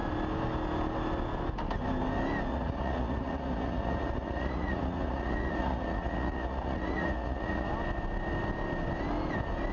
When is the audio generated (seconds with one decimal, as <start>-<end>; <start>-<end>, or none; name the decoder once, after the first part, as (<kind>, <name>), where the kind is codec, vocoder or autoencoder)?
2.5-7.7 (vocoder, Vocos)